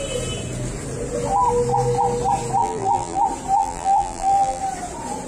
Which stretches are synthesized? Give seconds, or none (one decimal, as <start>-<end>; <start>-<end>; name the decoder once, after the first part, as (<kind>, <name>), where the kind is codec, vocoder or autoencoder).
2.6-3.2 (vocoder, BigVGAN v2); 3.6-4.6